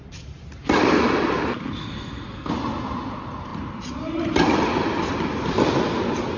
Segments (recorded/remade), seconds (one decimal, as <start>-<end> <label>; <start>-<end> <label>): 0.0-1.8 recorded; 1.8-2.5 remade; 2.5-6.4 recorded